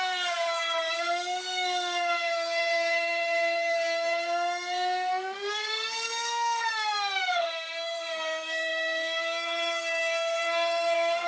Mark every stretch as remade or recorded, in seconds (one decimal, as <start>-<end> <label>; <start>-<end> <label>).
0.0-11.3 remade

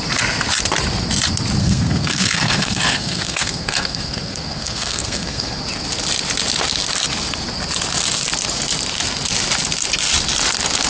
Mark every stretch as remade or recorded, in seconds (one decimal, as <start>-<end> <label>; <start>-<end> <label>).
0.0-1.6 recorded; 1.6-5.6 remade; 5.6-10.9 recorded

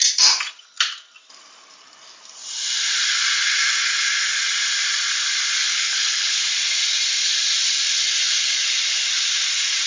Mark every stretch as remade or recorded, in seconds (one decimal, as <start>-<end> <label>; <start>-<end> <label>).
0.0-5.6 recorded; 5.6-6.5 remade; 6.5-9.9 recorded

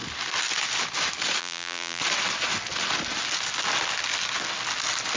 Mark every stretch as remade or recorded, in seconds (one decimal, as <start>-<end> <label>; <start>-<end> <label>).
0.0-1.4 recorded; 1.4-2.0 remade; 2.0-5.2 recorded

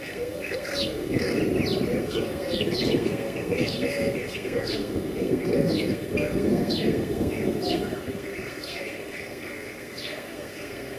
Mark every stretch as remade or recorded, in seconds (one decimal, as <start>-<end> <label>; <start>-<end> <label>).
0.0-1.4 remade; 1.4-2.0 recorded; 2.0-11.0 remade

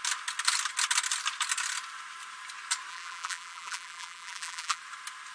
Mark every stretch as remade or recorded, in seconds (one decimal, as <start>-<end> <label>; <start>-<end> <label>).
0.0-2.9 recorded; 2.9-4.8 remade; 4.8-5.3 recorded